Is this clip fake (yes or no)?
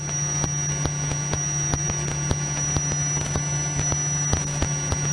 no